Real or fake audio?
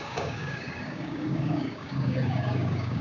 fake